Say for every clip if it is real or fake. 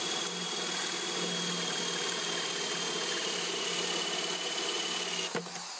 real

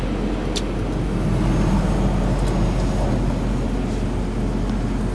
real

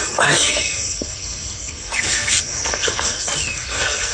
fake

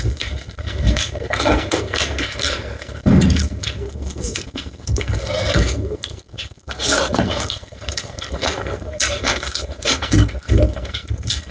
fake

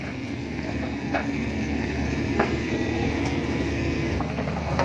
fake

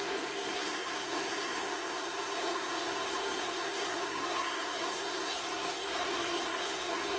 fake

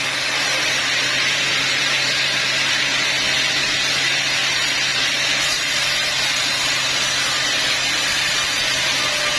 real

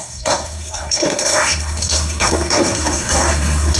fake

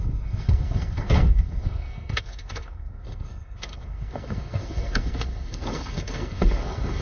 fake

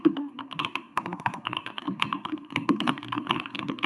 fake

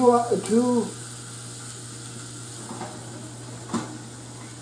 real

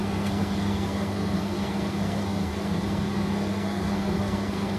fake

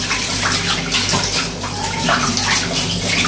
real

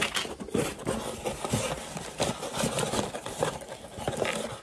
real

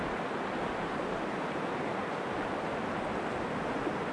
real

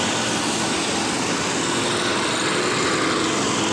real